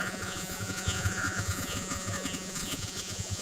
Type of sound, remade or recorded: remade